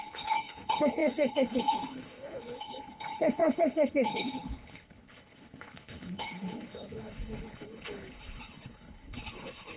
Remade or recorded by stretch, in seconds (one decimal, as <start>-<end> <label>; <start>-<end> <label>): 0.0-9.8 remade